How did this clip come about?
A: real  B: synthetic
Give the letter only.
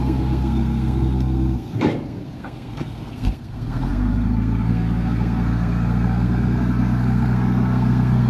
B